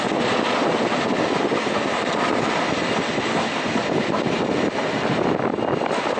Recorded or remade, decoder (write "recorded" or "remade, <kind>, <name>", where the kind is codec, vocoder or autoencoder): recorded